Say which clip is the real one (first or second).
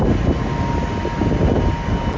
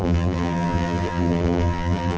first